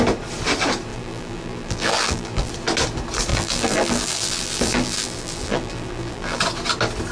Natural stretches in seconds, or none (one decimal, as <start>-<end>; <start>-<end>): 0.0-0.9; 2.5-3.3; 6.4-7.1